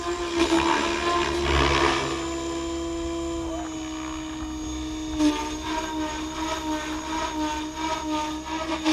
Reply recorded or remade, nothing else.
recorded